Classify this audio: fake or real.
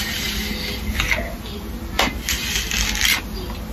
real